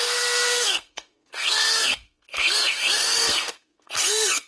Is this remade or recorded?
remade